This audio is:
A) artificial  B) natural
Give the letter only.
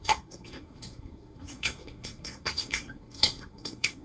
A